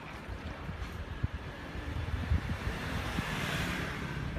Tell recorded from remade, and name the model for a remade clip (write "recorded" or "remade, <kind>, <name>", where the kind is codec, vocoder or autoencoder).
remade, vocoder, BigVGAN v2